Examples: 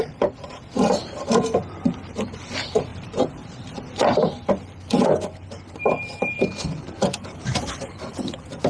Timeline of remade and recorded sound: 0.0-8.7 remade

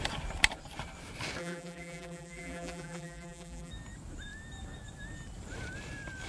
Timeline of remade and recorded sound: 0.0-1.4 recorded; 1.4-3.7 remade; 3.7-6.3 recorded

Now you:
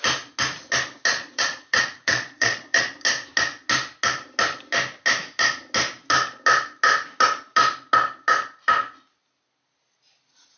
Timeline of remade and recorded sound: 0.0-1.1 recorded; 1.1-2.9 remade; 2.9-10.6 recorded